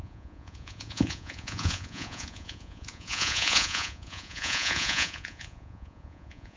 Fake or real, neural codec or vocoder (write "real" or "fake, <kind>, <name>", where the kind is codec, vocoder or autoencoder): fake, vocoder, Vocos